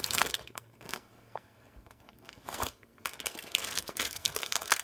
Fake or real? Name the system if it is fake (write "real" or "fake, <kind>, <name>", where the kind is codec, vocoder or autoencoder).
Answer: fake, codec, SNAC